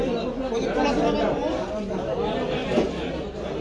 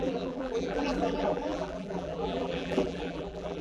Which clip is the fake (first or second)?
second